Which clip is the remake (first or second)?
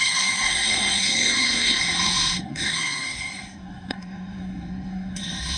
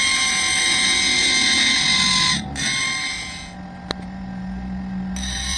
first